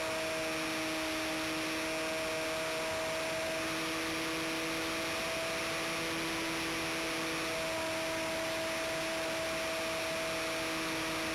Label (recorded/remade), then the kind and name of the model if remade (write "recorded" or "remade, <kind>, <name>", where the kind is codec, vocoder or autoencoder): recorded